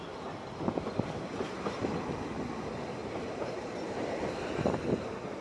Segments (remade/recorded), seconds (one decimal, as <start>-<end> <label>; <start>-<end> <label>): 0.0-5.4 recorded